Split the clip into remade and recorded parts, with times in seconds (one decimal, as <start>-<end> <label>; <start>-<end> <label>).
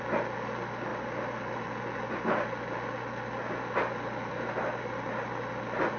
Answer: 0.0-6.0 recorded